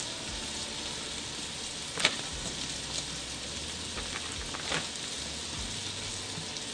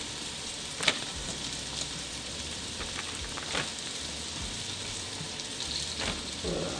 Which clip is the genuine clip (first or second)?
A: first